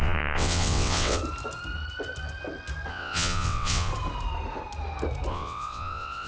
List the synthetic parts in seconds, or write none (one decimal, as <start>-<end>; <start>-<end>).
0.0-1.2; 2.9-3.9; 5.3-6.3